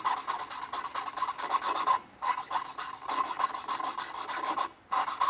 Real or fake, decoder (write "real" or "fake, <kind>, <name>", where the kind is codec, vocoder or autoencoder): real